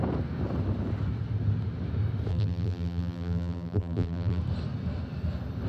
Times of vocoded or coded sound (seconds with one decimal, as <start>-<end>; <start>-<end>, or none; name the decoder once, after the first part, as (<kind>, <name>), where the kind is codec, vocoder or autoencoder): 2.3-4.4 (vocoder, BigVGAN v2)

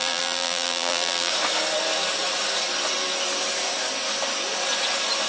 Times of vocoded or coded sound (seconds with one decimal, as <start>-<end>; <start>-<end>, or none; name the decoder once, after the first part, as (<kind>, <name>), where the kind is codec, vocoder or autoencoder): 0.0-1.3 (vocoder, BigVGAN v2)

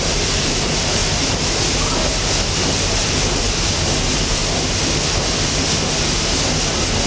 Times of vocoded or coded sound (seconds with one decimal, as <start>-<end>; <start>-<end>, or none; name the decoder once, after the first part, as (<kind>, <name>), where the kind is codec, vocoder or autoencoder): 0.0-1.0 (vocoder, BigVGAN v2); 1.6-2.1; 2.7-4.4

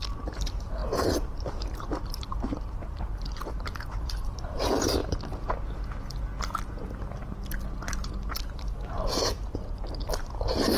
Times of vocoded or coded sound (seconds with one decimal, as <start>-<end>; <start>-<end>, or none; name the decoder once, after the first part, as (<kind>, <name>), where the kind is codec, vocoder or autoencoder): 0.0-5.0 (vocoder, BigVGAN v2); 8.4-10.8

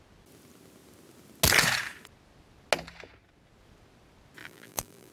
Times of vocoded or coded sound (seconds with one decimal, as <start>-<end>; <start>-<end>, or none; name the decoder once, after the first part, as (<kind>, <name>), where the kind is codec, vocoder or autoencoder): 4.4-5.1 (vocoder, BigVGAN v2)